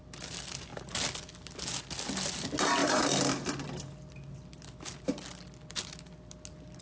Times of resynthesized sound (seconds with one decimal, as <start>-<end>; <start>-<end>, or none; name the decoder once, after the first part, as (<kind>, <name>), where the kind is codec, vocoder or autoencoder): none